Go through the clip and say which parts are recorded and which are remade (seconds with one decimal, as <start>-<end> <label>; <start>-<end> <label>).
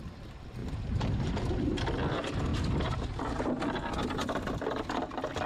0.0-0.6 recorded; 0.6-1.3 remade; 1.3-5.5 recorded